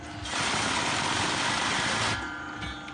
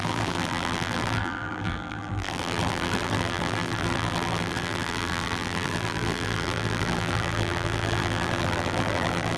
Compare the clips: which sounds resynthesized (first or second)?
second